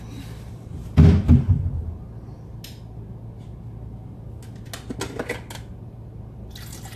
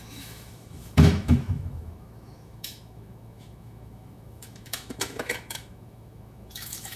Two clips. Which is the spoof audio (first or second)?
second